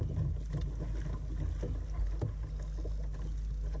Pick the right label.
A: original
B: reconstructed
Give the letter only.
A